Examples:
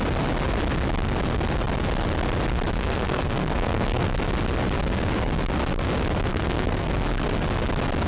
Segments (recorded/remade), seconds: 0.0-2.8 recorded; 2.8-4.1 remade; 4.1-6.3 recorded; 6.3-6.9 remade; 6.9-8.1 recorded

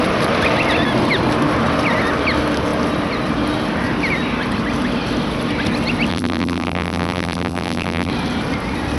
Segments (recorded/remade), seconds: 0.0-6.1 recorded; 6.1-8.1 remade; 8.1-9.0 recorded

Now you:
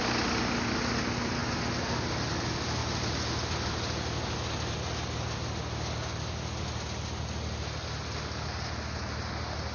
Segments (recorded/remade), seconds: 0.0-9.7 recorded

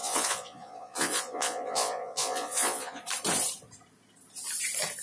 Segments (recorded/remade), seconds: 0.0-3.0 remade; 3.0-5.0 recorded

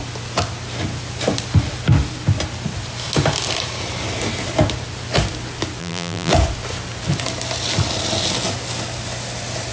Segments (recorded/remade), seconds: 0.0-5.8 recorded; 5.8-6.3 remade; 6.3-9.7 recorded

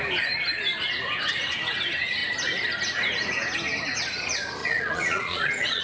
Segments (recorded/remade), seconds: 0.0-4.6 recorded; 4.6-5.8 remade

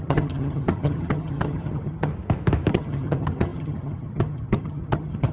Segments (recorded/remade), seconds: 0.0-2.1 remade; 2.1-2.7 recorded; 2.7-5.3 remade